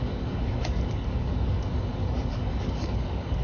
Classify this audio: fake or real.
fake